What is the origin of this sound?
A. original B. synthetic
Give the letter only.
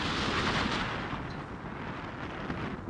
A